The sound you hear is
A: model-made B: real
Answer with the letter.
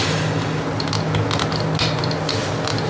B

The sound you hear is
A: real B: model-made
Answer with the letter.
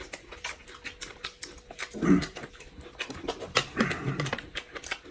A